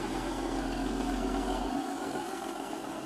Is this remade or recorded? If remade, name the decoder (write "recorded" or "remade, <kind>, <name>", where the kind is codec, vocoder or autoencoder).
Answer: remade, codec, SNAC